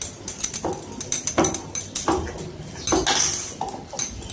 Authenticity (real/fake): real